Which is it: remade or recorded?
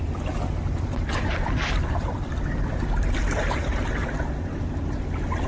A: recorded